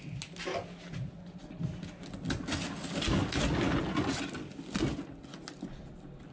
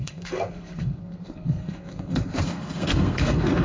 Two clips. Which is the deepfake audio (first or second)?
second